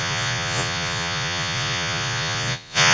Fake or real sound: fake